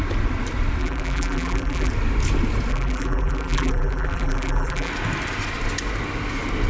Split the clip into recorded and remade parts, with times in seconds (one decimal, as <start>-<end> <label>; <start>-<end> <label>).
0.0-0.8 recorded; 0.8-1.9 remade; 1.9-2.7 recorded; 2.7-4.9 remade; 4.9-6.7 recorded